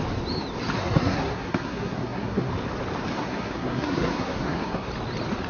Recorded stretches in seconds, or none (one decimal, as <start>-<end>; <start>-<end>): 0.0-0.8; 2.5-3.1; 4.9-5.5